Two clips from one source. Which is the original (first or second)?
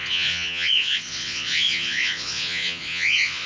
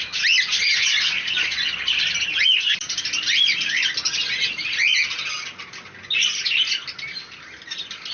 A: second